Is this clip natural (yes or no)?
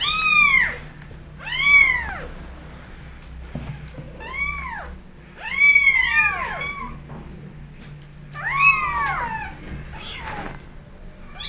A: yes